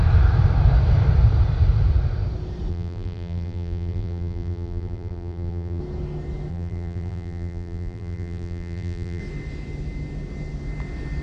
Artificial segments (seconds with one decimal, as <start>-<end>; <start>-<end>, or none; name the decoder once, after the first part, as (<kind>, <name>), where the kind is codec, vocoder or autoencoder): 2.7-5.8 (vocoder, BigVGAN v2); 6.5-9.2